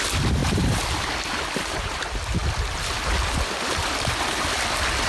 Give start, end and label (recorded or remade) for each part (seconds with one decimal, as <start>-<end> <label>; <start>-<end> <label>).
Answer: 0.0-0.4 recorded; 0.4-1.1 remade; 1.1-5.1 recorded